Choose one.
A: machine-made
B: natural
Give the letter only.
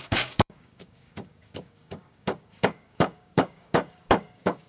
A